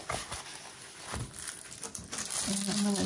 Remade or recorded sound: recorded